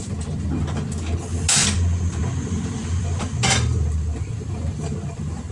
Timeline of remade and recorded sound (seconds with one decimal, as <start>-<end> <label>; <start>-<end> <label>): 0.0-5.5 recorded